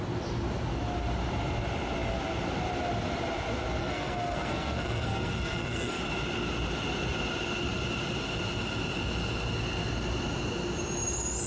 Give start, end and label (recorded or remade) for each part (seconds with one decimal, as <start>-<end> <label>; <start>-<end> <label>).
0.0-3.8 recorded; 3.8-6.0 remade; 6.0-11.5 recorded

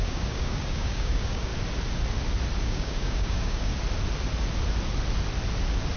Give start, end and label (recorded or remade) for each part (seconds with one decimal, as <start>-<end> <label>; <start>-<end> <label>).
0.0-1.5 remade; 1.5-2.6 recorded; 2.6-3.7 remade; 3.7-6.0 recorded

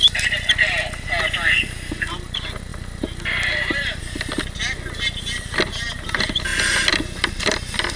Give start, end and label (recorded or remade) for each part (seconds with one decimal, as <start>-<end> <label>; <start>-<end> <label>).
0.0-8.0 recorded

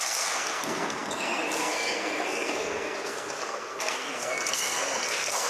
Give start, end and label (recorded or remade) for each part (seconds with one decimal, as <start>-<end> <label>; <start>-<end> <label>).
0.0-5.5 remade

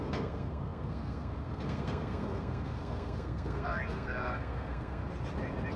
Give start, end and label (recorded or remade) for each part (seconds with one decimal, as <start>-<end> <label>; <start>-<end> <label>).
0.0-5.0 remade; 5.0-5.8 recorded